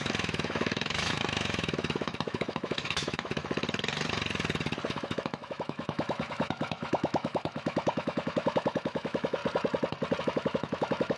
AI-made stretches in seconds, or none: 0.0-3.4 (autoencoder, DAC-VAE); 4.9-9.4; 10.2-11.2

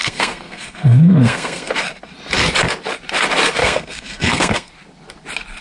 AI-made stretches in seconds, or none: 0.0-1.7 (codec, SNAC); 3.6-4.7

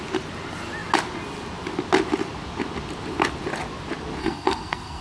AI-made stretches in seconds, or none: 4.2-5.0 (codec, SNAC)

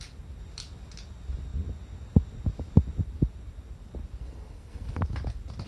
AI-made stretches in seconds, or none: 4.2-5.0 (codec, SNAC)

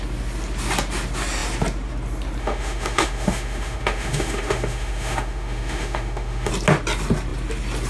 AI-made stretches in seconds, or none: 2.4-6.5 (autoencoder, DAC-VAE)

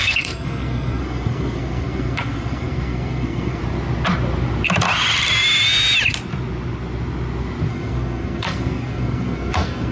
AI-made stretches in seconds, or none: 0.0-3.6 (codec, SNAC); 7.7-9.9

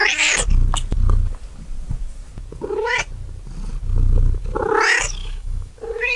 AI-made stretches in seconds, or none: 5.2-5.7 (autoencoder, DAC-VAE)

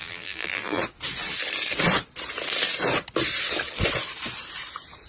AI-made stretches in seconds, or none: 0.0-0.8 (vocoder, BigVGAN v2)